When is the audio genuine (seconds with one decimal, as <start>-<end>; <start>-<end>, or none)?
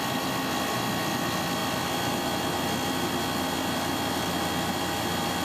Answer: 0.0-5.4